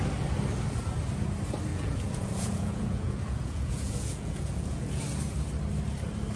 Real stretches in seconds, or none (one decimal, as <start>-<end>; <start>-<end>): 0.0-1.7; 5.0-6.4

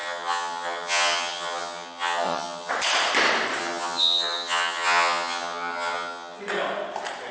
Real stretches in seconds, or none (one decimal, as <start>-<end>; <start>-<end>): 2.7-3.6; 6.4-7.3

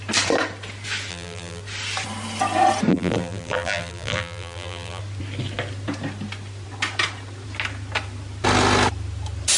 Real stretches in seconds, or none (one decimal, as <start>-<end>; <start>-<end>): 0.0-1.1; 1.6-2.9; 5.0-9.6

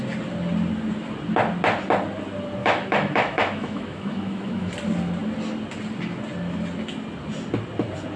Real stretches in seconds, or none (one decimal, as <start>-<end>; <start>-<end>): 0.0-2.6; 4.7-8.2

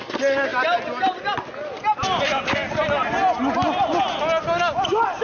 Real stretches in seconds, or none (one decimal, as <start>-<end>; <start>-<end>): 0.0-5.2